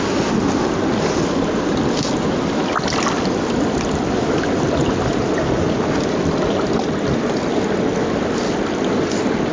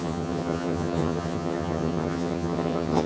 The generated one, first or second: second